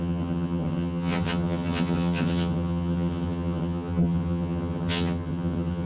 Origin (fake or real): fake